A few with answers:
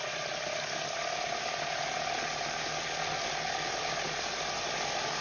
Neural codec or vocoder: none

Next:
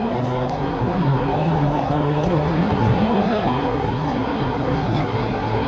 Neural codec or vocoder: codec, SNAC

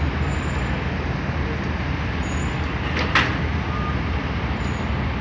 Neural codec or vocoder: none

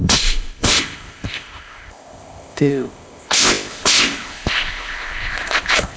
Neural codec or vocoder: codec, ZipCodec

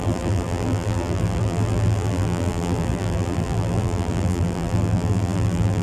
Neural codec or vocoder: vocoder, BigVGAN v2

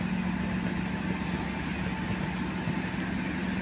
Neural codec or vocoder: none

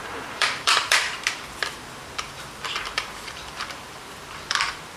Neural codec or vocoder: vocoder, BigVGAN v2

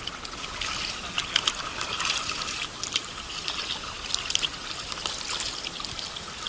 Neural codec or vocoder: none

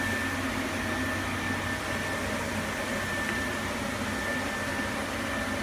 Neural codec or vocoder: none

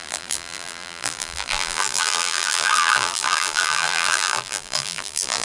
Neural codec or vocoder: vocoder, BigVGAN v2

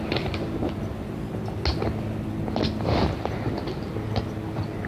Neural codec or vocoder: none